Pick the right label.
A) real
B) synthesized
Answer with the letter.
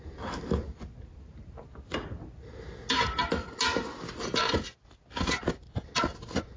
A